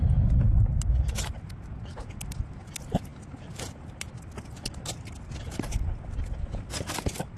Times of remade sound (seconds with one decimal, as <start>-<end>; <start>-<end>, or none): none